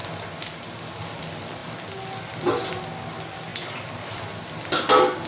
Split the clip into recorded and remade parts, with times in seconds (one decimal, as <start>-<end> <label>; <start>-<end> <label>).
0.0-5.3 recorded